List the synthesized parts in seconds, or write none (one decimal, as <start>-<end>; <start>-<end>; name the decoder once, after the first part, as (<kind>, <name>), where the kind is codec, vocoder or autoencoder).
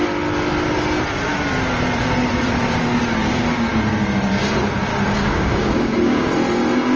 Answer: 4.9-6.3 (codec, DAC)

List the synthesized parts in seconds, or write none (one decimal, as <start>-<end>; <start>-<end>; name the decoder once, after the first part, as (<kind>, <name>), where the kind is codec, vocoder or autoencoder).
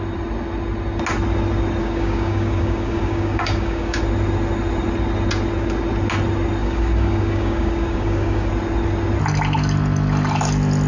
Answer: 1.8-4.0 (codec, DAC); 6.6-8.5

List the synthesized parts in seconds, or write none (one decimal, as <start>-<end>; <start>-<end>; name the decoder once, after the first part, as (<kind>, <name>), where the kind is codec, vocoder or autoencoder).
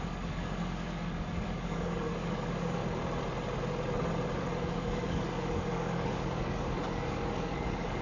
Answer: 0.0-2.8 (codec, DAC); 4.4-8.0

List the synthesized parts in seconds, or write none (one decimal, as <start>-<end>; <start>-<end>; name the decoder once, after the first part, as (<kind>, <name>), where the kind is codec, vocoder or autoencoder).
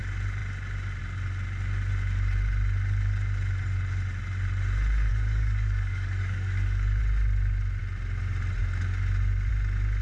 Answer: 5.1-7.0 (codec, DAC)